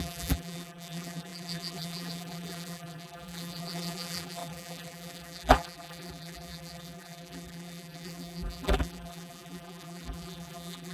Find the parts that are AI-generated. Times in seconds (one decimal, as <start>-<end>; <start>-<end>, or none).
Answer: 0.0-10.9